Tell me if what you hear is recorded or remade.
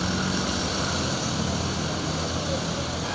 recorded